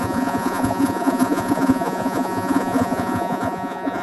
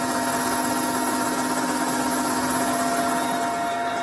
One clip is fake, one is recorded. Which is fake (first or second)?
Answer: first